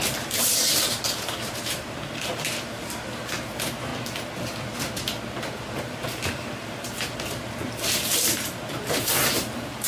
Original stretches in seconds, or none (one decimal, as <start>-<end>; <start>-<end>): 3.9-5.5